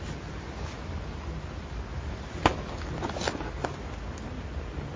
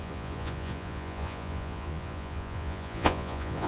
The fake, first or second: second